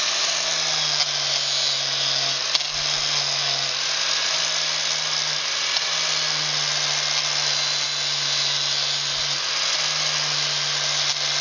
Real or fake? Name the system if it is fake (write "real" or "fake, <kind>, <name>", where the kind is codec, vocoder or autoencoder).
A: real